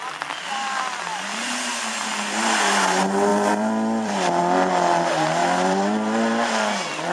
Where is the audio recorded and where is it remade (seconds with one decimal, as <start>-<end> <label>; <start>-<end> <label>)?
0.0-1.1 recorded; 1.1-1.7 remade; 1.7-3.3 recorded; 3.3-4.4 remade; 4.4-5.4 recorded; 5.4-7.1 remade